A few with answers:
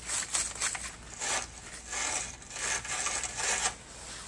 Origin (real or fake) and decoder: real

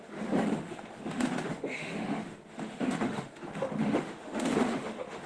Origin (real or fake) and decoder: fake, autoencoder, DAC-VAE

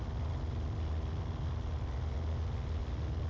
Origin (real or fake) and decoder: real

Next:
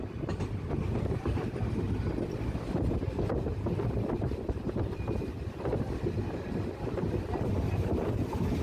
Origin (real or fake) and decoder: real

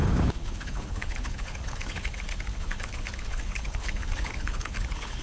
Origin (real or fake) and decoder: fake, codec, HILCodec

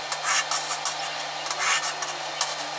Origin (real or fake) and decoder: real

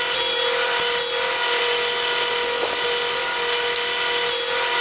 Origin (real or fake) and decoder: real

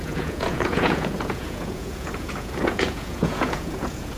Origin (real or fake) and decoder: fake, vocoder, Vocos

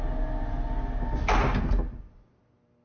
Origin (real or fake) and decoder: real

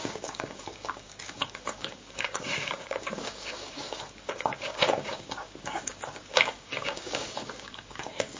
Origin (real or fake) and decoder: fake, codec, DAC